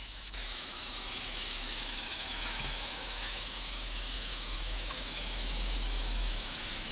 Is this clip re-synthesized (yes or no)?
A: yes